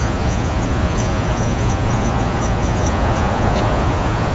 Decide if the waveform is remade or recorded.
remade